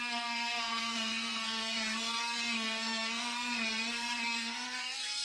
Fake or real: fake